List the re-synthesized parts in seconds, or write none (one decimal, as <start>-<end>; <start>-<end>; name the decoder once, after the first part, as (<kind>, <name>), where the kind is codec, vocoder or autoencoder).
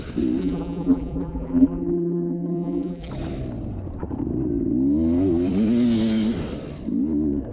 0.4-3.1 (vocoder, BigVGAN v2)